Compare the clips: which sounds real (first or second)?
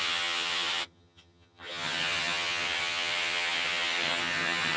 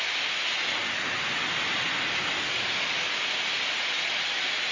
second